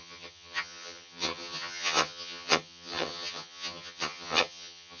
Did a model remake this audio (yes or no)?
yes